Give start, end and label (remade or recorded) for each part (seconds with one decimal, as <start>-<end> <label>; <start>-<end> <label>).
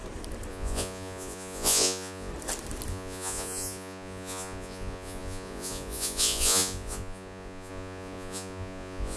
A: 0.0-0.5 recorded; 0.5-2.3 remade; 2.3-2.9 recorded; 2.9-9.2 remade